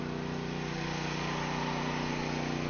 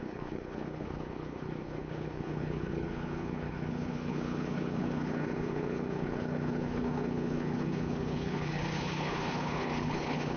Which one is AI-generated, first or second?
second